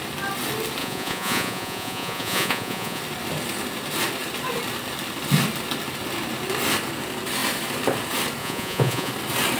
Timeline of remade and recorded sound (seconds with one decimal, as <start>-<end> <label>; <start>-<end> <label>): 0.0-0.8 recorded; 0.8-3.0 remade; 3.0-8.4 recorded; 8.4-9.1 remade; 9.1-9.6 recorded